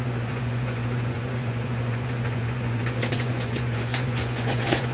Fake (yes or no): yes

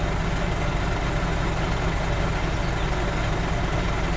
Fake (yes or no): no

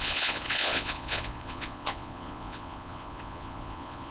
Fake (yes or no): yes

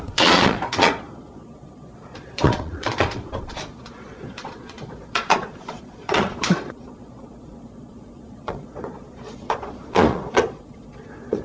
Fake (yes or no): yes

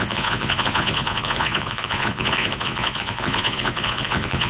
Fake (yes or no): yes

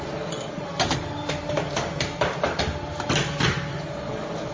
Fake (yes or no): no